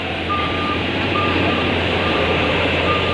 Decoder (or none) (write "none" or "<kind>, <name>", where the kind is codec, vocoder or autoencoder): vocoder, BigVGAN v2